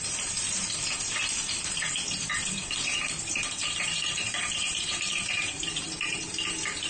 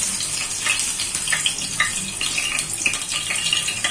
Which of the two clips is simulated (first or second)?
first